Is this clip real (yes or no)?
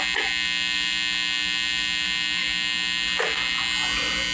yes